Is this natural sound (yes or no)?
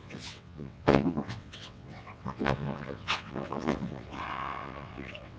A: no